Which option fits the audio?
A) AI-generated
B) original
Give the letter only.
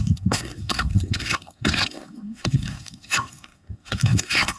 A